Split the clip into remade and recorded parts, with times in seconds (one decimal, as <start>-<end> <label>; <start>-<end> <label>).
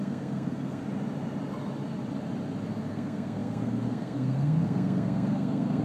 0.0-0.8 remade; 0.8-2.9 recorded; 2.9-5.8 remade